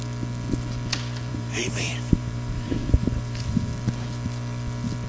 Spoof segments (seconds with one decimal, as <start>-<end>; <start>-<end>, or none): 1.3-3.6